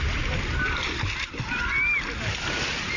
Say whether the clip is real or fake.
real